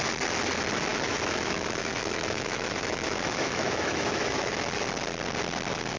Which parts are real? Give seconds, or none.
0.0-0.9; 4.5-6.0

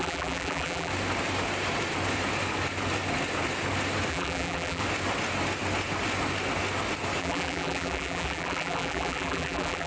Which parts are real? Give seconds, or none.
0.9-4.1; 4.8-7.2

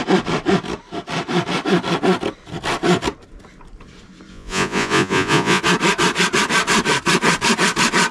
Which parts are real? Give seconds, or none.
0.0-4.3; 5.6-8.1

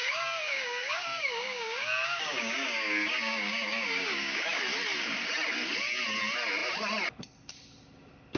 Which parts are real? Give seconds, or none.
4.6-8.4

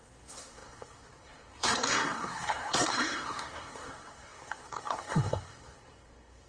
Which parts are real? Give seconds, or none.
none

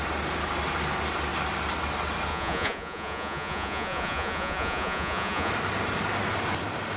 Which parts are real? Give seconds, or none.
0.0-2.3; 5.5-7.0

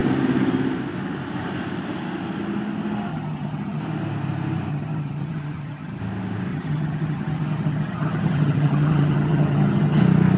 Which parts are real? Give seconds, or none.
0.0-3.1; 3.8-4.7; 6.0-6.5; 10.0-10.4

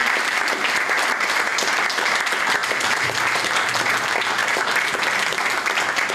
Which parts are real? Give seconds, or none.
0.9-2.6; 3.2-6.1